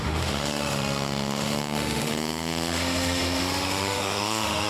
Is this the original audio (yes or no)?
no